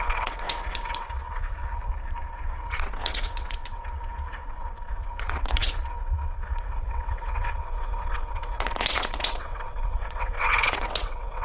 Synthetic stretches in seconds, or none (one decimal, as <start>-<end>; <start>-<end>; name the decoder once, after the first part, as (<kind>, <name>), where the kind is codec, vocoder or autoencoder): 0.0-1.6 (vocoder, WaveNeXt); 2.3-11.4